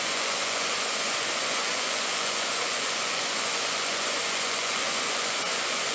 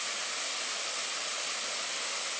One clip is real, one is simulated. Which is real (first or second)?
second